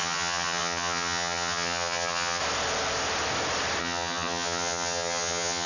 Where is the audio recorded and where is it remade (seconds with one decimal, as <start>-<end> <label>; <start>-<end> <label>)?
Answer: 0.0-2.4 remade; 2.4-3.8 recorded; 3.8-5.7 remade